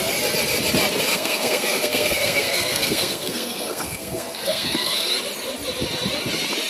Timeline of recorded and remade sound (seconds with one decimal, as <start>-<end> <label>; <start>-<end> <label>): 0.0-1.1 recorded; 1.1-5.1 remade; 5.1-6.7 recorded